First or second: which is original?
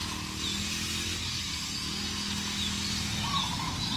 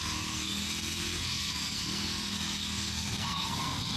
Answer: first